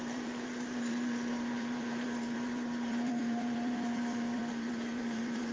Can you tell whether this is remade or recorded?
remade